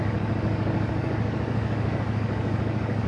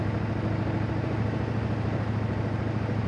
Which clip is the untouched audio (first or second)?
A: second